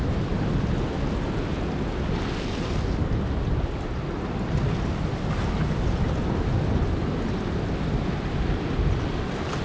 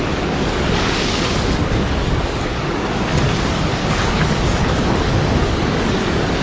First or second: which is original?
first